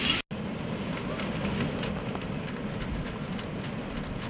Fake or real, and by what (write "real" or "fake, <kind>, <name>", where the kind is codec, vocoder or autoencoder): real